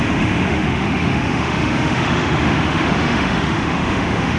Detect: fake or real fake